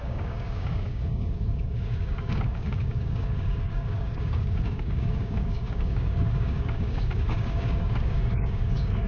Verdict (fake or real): fake